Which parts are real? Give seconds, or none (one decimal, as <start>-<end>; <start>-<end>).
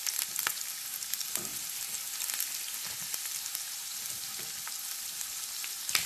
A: 0.0-6.1